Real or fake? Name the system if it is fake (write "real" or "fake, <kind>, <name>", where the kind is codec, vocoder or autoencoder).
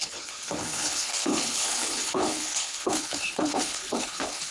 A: fake, codec, HILCodec